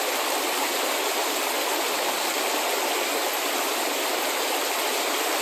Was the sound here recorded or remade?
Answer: recorded